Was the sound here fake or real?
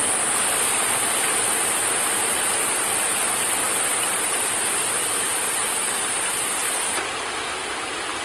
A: real